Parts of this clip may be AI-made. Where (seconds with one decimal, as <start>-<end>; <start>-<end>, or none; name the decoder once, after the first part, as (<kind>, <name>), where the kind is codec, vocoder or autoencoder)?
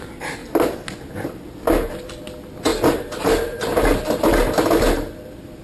none